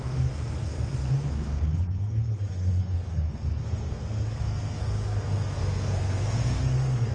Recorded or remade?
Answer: remade